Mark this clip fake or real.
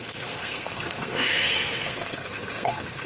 fake